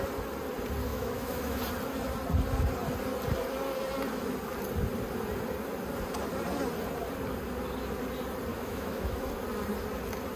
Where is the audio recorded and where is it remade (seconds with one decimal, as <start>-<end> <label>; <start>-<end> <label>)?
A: 0.0-0.9 recorded; 0.9-1.6 remade; 1.6-8.5 recorded; 8.5-9.3 remade; 9.3-10.4 recorded